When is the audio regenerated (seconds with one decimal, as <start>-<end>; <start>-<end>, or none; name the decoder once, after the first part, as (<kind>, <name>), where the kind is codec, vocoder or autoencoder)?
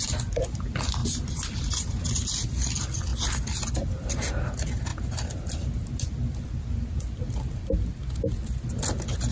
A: 1.0-1.7 (vocoder, BigVGAN v2); 3.1-4.1